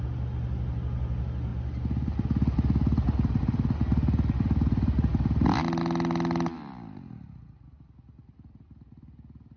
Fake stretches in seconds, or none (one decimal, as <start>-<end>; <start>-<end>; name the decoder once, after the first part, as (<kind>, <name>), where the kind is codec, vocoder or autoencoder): none